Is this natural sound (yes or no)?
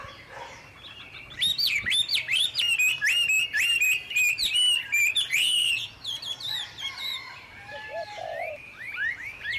no